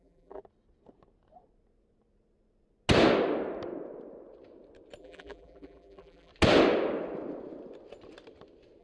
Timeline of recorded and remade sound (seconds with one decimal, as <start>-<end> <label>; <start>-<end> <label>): 0.0-0.4 remade; 0.4-5.0 recorded; 5.0-6.3 remade; 6.3-8.8 recorded